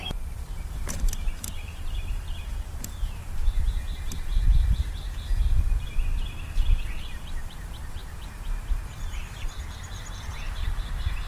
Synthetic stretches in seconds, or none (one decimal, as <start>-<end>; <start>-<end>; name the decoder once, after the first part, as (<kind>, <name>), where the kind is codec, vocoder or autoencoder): 0.0-4.3 (vocoder, BigVGAN v2); 7.0-11.3